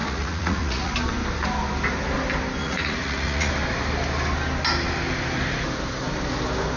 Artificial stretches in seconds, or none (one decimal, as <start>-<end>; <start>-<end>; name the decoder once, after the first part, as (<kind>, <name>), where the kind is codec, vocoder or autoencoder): 0.0-0.9 (vocoder, Vocos); 2.6-3.5